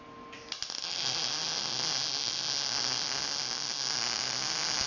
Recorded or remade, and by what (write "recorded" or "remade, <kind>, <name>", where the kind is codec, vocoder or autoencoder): recorded